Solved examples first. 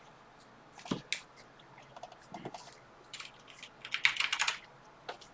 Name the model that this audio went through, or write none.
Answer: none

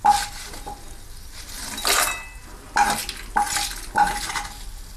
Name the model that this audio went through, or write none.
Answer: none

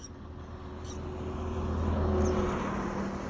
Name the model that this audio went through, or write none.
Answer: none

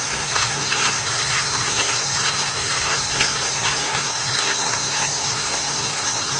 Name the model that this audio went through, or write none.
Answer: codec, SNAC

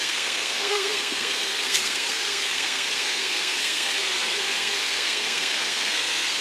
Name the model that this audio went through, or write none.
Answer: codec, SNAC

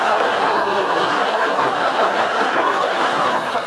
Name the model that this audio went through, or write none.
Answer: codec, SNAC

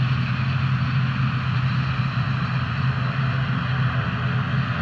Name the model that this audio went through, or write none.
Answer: none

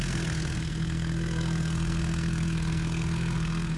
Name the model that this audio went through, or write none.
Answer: codec, SNAC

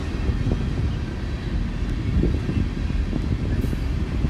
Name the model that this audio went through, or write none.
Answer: none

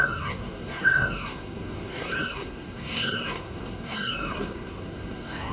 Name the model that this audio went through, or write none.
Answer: codec, SNAC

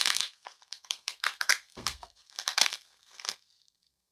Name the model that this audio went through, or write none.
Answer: codec, SNAC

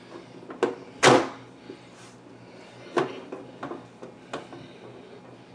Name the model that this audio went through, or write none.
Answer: none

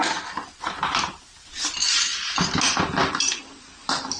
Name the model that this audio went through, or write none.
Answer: none